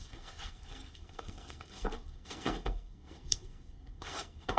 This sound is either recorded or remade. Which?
remade